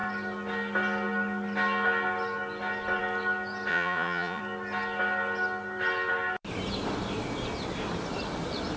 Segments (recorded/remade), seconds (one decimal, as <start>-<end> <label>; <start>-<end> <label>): 0.0-3.7 recorded; 3.7-4.4 remade; 4.4-8.8 recorded